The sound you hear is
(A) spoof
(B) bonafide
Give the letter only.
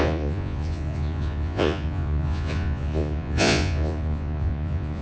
A